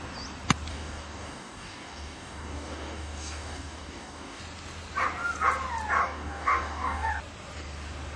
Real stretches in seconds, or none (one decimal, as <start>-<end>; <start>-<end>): 0.0-0.7; 4.4-6.0; 7.1-8.2